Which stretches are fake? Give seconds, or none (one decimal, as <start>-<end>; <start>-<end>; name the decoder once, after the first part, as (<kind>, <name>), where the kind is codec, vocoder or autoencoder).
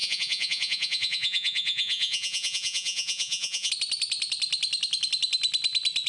0.0-3.7 (vocoder, Vocos)